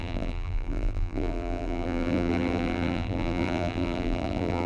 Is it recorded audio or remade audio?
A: remade